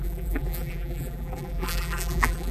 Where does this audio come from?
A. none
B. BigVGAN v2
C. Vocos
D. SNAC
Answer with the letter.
B